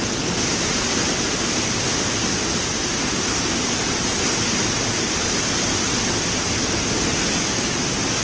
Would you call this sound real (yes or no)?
yes